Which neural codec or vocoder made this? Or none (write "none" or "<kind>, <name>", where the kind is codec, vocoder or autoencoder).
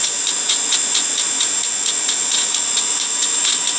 vocoder, Vocos